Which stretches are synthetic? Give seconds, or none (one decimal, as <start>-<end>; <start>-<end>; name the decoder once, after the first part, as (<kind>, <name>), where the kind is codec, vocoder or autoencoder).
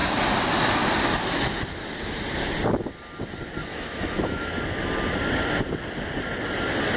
3.7-4.5 (autoencoder, DAC-VAE)